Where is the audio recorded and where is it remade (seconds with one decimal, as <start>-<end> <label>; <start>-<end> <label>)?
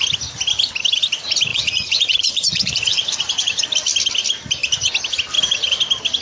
0.0-1.5 recorded; 1.5-3.6 remade; 3.6-6.2 recorded